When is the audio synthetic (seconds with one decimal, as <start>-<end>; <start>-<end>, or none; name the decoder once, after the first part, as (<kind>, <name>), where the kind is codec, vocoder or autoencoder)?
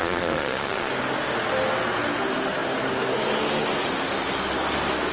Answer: 0.0-0.9 (vocoder, Vocos)